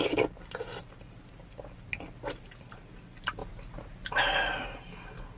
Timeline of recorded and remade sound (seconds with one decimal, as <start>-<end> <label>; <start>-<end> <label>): 0.0-5.4 recorded